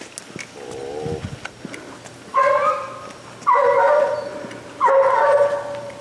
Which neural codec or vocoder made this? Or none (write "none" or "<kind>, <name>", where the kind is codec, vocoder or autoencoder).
none